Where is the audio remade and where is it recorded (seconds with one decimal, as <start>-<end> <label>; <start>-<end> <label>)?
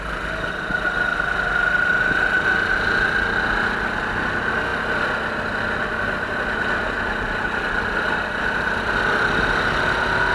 0.0-10.3 recorded